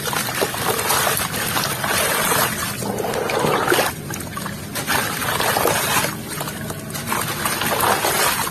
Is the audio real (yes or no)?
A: yes